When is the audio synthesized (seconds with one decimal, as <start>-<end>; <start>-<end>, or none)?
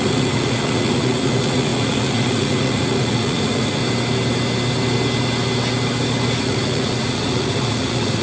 0.0-3.8; 6.4-8.2